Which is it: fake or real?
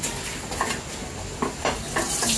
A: real